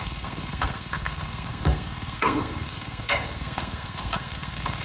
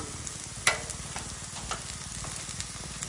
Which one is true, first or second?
second